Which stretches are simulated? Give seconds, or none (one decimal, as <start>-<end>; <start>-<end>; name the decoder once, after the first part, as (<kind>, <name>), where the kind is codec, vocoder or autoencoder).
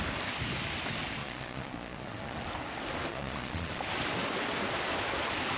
1.2-2.5 (vocoder, Vocos); 3.1-3.8